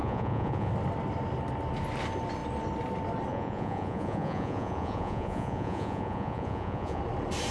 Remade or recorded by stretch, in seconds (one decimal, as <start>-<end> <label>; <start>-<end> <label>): 0.0-0.7 remade; 0.7-3.3 recorded; 3.3-7.0 remade; 7.0-7.5 recorded

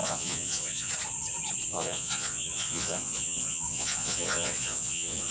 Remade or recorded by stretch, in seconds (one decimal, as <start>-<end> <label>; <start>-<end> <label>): 0.0-0.9 remade; 0.9-1.7 recorded; 1.7-5.3 remade